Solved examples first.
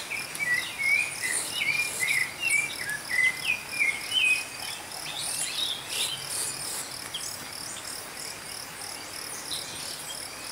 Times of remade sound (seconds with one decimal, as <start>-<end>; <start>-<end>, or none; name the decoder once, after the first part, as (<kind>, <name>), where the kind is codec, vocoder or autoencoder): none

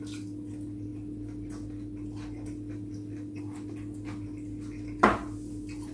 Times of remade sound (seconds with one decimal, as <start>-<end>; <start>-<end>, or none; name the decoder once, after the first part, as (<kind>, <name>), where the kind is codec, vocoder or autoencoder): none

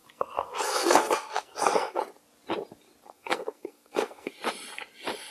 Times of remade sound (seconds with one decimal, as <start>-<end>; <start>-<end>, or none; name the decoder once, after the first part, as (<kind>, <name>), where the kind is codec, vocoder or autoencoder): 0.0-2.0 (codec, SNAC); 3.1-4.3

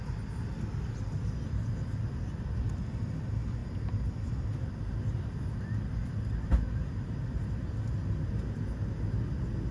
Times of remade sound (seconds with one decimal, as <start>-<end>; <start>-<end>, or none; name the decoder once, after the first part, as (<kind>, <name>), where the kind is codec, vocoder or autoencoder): 0.5-2.7 (vocoder, BigVGAN v2); 3.6-4.3

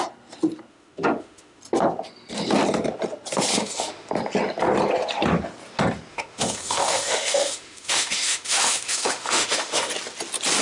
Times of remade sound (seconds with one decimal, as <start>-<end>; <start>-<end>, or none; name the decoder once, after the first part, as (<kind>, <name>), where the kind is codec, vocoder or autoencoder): 0.7-1.6 (autoencoder, DAC-VAE); 3.5-4.1; 6.1-9.9

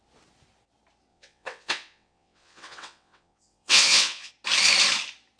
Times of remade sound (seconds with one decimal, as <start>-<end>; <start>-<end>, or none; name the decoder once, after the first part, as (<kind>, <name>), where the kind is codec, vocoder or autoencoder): 1.1-4.3 (vocoder, WaveNeXt)

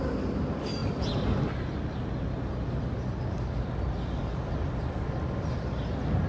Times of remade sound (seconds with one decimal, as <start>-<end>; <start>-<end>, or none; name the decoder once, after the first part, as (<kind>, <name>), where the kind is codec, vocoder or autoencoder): none

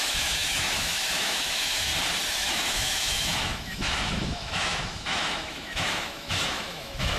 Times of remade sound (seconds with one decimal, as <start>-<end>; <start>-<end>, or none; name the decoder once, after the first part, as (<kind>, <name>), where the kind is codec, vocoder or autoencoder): 0.0-1.9 (autoencoder, DAC-VAE); 2.4-7.2